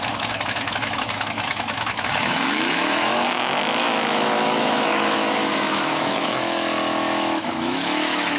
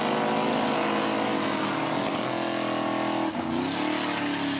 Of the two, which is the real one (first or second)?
second